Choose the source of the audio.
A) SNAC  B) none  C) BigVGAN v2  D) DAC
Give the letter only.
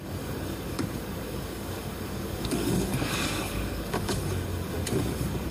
D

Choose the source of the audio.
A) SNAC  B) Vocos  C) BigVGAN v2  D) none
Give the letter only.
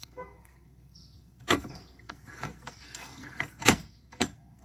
A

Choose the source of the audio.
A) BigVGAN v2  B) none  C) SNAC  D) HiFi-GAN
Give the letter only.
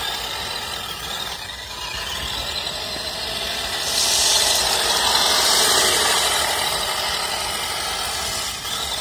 B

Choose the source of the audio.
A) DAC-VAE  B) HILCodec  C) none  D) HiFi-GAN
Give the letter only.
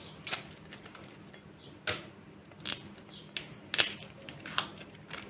C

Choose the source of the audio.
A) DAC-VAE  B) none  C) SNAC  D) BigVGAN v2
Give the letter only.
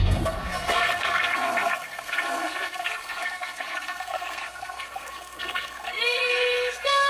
C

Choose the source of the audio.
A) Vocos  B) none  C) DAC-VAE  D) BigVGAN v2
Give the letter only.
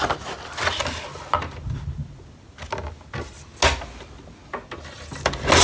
B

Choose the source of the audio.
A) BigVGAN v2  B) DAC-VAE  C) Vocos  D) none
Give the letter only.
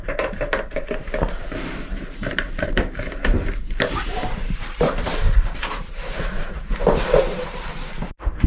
A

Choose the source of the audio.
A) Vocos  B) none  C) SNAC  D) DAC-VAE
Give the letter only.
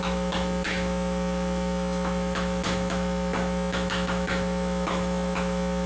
D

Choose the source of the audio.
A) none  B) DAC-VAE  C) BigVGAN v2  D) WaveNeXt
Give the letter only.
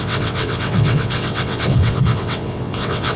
D